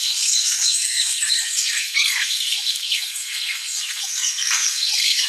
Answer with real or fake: fake